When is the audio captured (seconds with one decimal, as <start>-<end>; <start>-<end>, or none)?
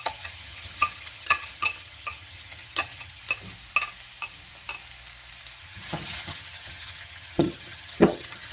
3.2-5.6